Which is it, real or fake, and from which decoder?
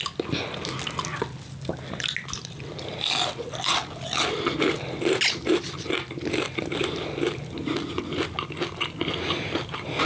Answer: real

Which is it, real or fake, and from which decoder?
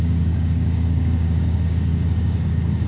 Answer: fake, codec, DAC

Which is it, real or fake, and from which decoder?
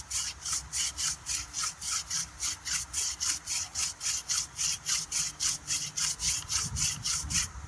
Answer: real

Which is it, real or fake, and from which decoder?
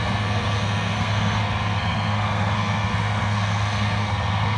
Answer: fake, codec, SNAC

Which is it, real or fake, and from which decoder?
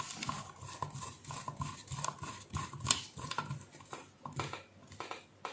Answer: real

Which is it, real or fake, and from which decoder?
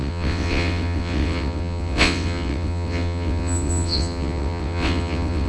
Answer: fake, vocoder, WaveNeXt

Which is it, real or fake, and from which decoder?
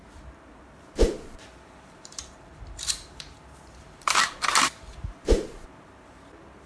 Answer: fake, vocoder, BigVGAN v2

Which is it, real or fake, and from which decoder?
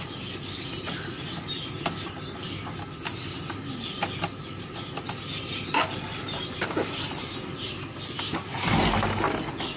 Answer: real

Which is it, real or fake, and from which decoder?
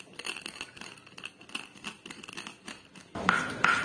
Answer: real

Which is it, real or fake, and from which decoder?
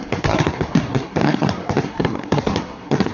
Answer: fake, codec, SNAC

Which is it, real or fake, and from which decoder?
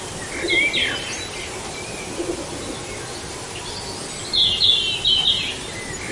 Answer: real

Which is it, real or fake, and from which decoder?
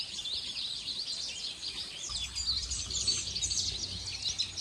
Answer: real